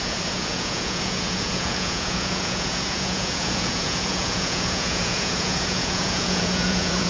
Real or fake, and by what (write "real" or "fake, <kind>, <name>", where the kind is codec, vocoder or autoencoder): fake, vocoder, Vocos